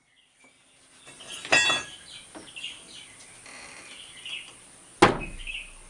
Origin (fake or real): real